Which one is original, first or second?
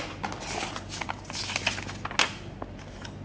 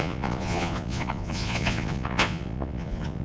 first